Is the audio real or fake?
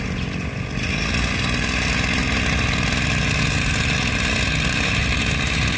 real